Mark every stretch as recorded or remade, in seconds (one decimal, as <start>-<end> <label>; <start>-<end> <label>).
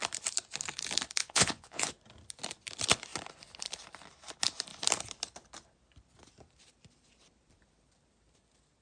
0.0-1.2 recorded; 1.2-1.9 remade; 1.9-8.8 recorded